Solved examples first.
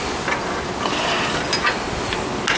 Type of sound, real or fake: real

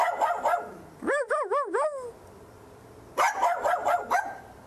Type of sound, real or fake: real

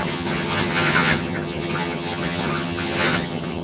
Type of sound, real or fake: fake